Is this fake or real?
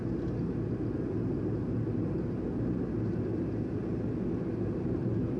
real